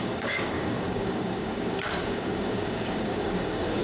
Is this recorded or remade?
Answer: remade